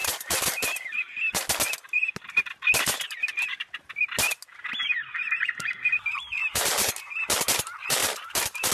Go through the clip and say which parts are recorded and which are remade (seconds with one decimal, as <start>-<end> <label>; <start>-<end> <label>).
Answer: 0.0-1.1 remade; 1.1-6.4 recorded; 6.4-7.2 remade; 7.2-8.0 recorded; 8.0-8.7 remade

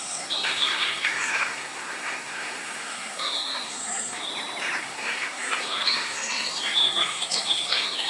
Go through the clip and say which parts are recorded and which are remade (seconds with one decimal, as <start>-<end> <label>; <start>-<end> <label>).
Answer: 0.0-4.3 remade; 4.3-4.8 recorded; 4.8-8.1 remade